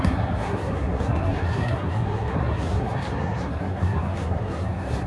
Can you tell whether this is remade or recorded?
remade